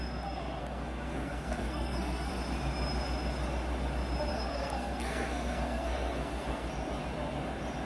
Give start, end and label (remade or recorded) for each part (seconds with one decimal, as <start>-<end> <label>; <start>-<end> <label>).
0.0-0.6 recorded; 0.6-2.3 remade; 2.3-4.3 recorded; 4.3-6.7 remade; 6.7-7.9 recorded